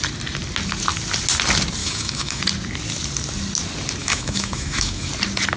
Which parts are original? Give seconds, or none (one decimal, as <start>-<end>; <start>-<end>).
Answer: 0.0-1.8; 2.4-4.0; 5.1-5.6